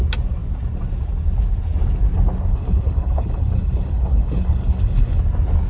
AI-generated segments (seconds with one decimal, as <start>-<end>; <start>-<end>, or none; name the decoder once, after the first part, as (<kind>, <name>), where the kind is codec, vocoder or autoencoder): 2.5-5.2 (codec, HILCodec)

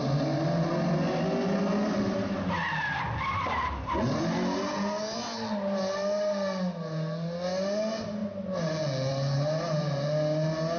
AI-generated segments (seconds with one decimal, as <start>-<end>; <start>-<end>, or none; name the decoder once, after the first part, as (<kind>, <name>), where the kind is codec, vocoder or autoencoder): none

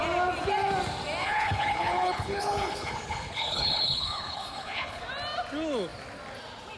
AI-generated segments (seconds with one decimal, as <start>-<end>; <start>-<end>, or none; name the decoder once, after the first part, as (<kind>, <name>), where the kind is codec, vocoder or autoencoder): 1.2-5.0 (codec, HILCodec)

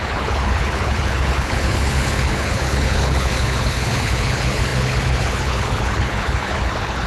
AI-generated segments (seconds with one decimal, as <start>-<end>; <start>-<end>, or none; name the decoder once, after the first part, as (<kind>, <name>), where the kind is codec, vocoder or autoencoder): 0.0-7.1 (codec, HILCodec)

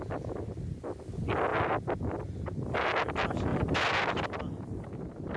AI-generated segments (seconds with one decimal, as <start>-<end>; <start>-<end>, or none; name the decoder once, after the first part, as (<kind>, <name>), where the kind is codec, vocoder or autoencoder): none

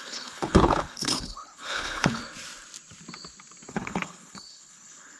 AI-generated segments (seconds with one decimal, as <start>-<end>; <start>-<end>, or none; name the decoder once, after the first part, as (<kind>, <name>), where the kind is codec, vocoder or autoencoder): 0.0-2.2 (codec, HILCodec); 3.7-5.2